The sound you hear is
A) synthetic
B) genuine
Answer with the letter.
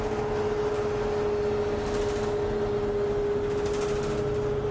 B